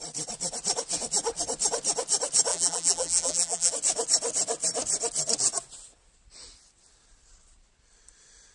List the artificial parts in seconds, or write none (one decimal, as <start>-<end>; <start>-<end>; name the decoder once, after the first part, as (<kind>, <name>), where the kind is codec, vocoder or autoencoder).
2.5-3.7 (vocoder, BigVGAN v2)